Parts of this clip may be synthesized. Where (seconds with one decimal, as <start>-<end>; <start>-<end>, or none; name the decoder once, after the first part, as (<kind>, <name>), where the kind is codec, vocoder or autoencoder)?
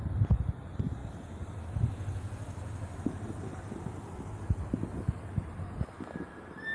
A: none